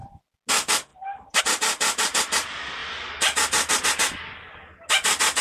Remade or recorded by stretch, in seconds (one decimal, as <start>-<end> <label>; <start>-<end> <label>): 0.0-0.9 recorded; 0.9-1.4 remade; 1.4-5.4 recorded